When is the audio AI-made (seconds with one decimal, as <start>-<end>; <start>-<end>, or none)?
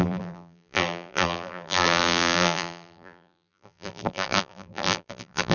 0.0-5.5